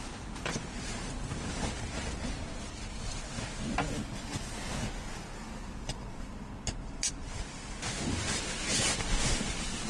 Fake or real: fake